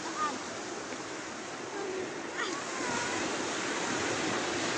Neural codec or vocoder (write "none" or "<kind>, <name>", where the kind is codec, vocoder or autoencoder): none